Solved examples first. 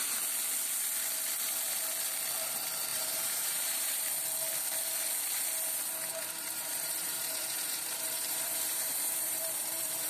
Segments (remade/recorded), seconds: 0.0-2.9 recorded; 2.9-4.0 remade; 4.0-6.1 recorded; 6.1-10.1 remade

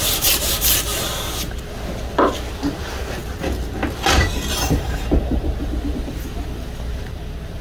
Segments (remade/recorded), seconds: 0.0-0.9 remade; 0.9-2.5 recorded; 2.5-3.2 remade; 3.2-4.5 recorded; 4.5-5.6 remade; 5.6-6.9 recorded; 6.9-7.6 remade

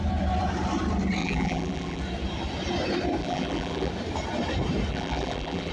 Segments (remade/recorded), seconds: 0.0-1.2 recorded; 1.2-2.0 remade; 2.0-3.2 recorded; 3.2-3.9 remade; 3.9-4.9 recorded; 4.9-5.7 remade

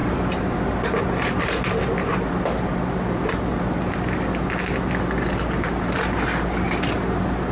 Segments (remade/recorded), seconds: 0.0-1.0 remade; 1.0-7.5 recorded

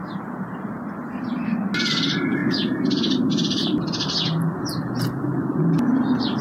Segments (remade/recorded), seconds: 0.0-1.9 recorded; 1.9-6.4 remade